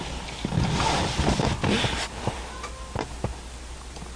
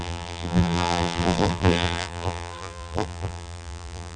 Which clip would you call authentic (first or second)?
first